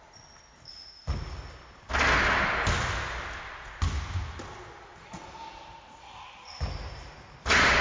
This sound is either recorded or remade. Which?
recorded